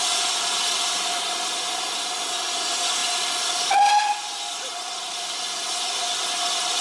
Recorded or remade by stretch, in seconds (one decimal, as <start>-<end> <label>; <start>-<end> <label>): 0.0-6.8 recorded